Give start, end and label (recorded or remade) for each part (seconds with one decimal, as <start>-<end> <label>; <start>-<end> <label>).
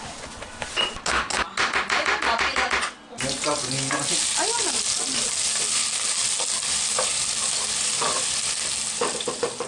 0.0-9.7 recorded